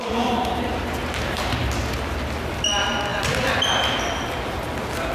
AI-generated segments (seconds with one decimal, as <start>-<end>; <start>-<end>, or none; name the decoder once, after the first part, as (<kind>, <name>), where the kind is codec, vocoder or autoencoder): 0.0-1.6 (vocoder, BigVGAN v2)